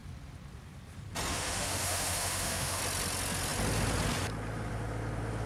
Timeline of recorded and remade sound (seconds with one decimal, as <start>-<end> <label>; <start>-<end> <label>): 0.0-1.3 recorded; 1.3-2.8 remade; 2.8-5.5 recorded